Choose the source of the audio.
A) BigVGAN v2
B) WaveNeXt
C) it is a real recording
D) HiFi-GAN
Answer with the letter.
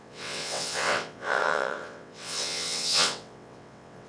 B